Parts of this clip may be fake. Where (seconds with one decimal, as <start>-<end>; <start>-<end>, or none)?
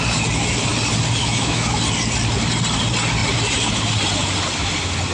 1.2-1.8